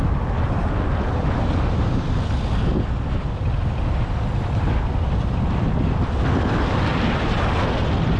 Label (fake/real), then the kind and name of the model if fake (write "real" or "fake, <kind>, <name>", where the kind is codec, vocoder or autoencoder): real